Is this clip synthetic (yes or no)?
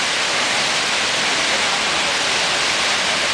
no